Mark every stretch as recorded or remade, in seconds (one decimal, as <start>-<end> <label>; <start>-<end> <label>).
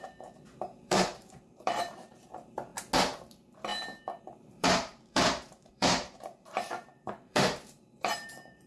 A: 0.0-2.7 remade; 2.7-3.2 recorded; 3.2-3.7 remade; 3.7-4.2 recorded; 4.2-8.7 remade